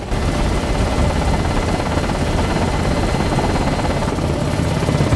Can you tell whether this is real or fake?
real